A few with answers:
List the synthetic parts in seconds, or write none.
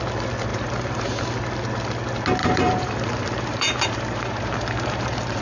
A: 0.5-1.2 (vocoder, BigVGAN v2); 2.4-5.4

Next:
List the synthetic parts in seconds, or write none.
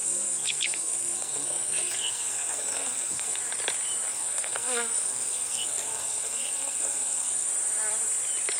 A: 0.0-3.4 (codec, SNAC); 4.1-7.5